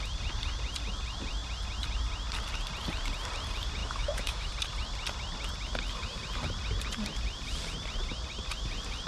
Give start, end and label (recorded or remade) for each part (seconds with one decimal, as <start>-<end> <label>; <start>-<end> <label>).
0.0-3.8 recorded; 3.8-4.5 remade; 4.5-9.1 recorded